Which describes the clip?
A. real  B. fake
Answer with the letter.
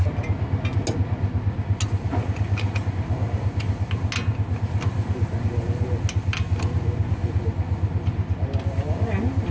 A